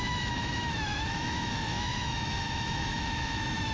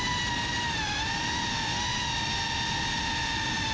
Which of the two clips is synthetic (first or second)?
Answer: first